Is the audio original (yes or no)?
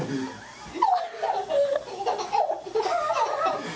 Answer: yes